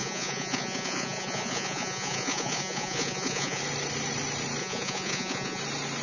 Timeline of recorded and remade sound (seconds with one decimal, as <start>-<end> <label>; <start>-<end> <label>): 0.0-3.6 remade; 3.6-4.6 recorded; 4.6-5.6 remade; 5.6-6.0 recorded